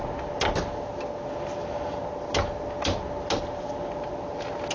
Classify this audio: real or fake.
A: real